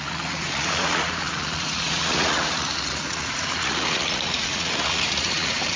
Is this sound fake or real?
fake